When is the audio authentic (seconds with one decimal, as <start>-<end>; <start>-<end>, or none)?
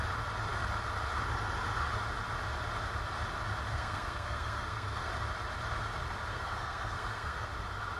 0.0-3.7; 5.1-6.3; 7.5-8.0